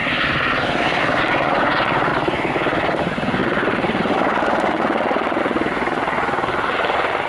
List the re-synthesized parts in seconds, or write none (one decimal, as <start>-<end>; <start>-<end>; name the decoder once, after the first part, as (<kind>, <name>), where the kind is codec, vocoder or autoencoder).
1.2-2.1 (vocoder, Vocos); 3.0-7.3